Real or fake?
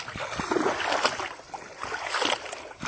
real